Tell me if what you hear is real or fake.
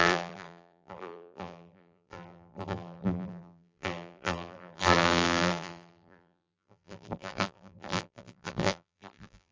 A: fake